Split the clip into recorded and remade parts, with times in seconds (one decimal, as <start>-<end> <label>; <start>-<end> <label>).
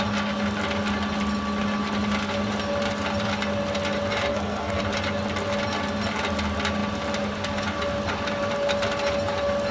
0.0-4.3 recorded; 4.3-4.8 remade; 4.8-9.7 recorded